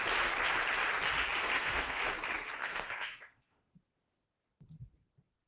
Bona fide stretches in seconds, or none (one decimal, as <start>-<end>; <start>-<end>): 0.0-1.4; 2.0-2.6; 3.8-5.5